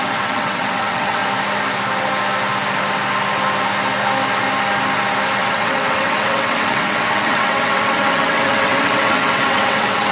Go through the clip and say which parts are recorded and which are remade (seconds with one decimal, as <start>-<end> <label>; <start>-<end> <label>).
0.0-1.2 remade; 1.2-5.4 recorded; 5.4-10.1 remade